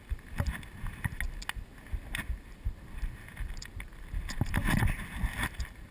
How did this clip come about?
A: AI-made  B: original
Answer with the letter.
B